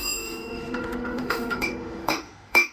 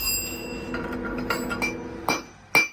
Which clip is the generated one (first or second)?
first